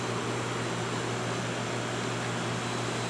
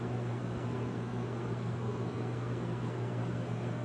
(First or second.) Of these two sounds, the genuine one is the first